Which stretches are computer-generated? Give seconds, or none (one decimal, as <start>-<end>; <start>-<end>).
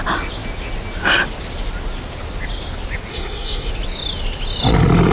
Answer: 3.1-3.7